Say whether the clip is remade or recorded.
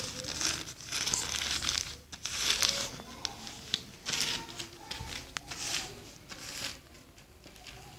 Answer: recorded